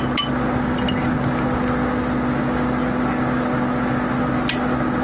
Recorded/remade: recorded